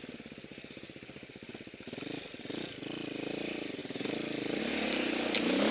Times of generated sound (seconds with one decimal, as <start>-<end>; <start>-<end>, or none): 0.5-1.3